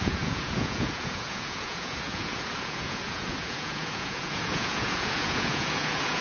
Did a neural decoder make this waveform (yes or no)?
yes